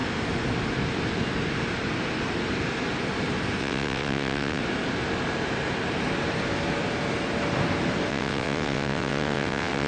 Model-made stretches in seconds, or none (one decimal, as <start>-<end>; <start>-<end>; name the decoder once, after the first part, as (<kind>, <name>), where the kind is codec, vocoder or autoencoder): 3.6-4.6 (vocoder, WaveNeXt); 8.1-9.9